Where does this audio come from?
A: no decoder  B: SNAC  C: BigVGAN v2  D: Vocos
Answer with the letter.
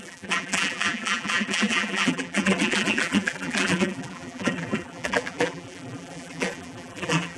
C